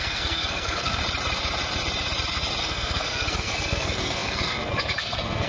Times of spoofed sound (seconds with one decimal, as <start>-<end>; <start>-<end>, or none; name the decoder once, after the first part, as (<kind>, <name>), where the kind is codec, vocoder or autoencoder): 0.0-1.0 (codec, SNAC); 2.6-5.5